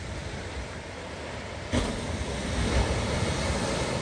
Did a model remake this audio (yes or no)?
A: no